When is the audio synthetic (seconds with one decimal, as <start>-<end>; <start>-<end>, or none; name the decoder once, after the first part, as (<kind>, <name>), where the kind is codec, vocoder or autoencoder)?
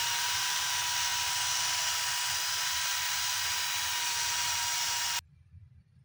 0.0-0.7 (vocoder, BigVGAN v2); 3.3-5.0